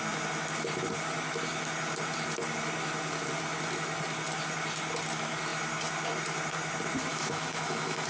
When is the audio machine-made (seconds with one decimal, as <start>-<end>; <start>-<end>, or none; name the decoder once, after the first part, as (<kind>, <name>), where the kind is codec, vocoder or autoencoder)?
7.1-8.1 (autoencoder, DAC-VAE)

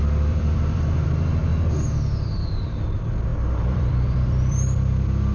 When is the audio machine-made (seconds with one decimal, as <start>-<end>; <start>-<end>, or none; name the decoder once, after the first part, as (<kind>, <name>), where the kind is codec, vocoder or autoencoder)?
0.0-1.5 (vocoder, BigVGAN v2); 2.3-5.3

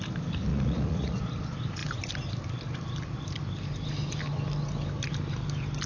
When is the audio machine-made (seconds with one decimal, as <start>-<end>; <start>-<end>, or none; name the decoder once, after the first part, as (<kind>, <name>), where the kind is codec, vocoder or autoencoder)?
0.5-1.2 (vocoder, Vocos)

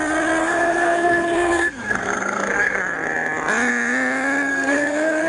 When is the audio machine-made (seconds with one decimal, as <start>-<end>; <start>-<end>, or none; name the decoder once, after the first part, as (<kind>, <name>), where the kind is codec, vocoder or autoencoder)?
0.4-2.8 (codec, SNAC); 4.5-5.3

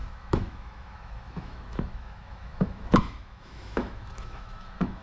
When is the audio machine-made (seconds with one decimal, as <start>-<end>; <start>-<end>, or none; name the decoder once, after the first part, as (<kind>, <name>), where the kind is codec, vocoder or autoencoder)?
0.0-5.0 (autoencoder, DAC-VAE)

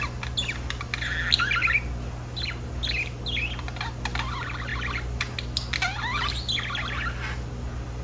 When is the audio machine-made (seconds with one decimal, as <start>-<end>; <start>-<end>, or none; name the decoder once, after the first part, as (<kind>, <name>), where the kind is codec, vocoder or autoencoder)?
none